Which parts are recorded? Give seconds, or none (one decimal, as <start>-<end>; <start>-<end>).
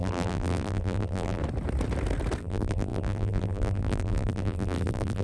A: 1.4-2.4